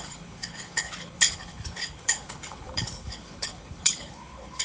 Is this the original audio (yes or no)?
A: no